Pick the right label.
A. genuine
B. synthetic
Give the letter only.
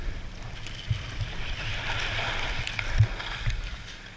A